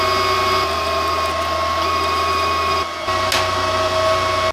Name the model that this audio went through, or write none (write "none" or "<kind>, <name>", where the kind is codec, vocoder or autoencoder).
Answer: none